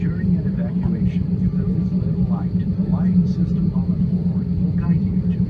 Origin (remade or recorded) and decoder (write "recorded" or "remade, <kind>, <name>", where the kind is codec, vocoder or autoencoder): remade, vocoder, BigVGAN v2